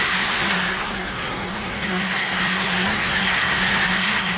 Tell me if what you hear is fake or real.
fake